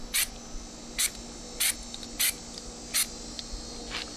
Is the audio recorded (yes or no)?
yes